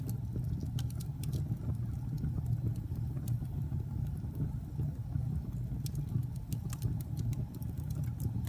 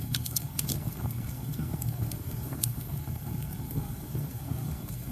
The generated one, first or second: second